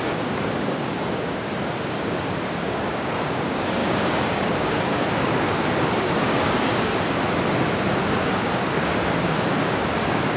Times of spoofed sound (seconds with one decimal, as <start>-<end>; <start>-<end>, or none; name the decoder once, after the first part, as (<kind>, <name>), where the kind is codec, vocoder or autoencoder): 0.0-1.5 (codec, DAC); 2.0-6.9; 8.1-10.4